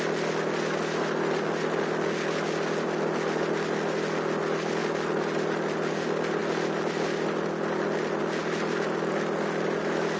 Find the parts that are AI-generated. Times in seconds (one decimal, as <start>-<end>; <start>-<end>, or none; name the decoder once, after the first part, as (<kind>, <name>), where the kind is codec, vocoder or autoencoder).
none